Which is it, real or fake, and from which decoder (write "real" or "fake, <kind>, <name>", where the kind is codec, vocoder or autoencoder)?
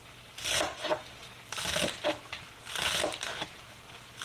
real